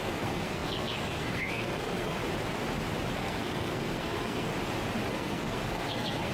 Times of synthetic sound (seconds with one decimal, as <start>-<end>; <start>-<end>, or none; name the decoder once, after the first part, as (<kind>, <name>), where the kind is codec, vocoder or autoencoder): 0.0-2.2 (codec, SNAC); 3.1-4.5; 5.1-6.3